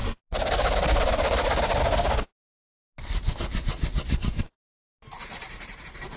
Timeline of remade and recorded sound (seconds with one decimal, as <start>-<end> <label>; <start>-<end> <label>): 0.0-6.2 recorded